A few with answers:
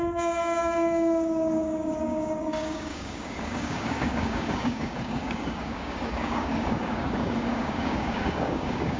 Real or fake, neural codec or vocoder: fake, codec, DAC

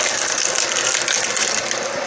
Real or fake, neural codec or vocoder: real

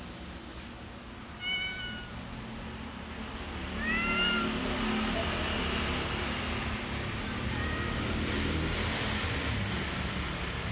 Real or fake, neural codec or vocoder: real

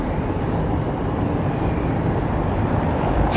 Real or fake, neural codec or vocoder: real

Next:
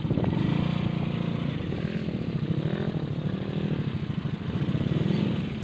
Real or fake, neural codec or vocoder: real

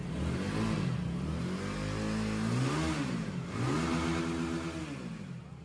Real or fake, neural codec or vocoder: real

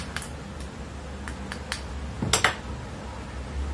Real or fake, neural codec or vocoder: real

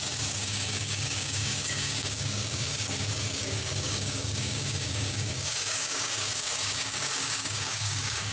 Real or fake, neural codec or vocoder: fake, codec, DAC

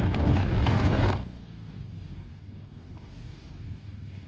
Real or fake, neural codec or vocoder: fake, codec, DAC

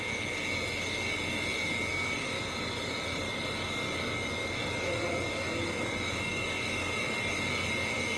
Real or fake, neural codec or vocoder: fake, codec, DAC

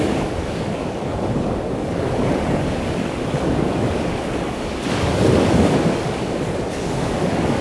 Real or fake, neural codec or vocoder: fake, codec, DAC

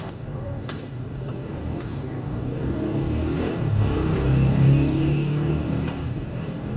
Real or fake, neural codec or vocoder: fake, codec, DAC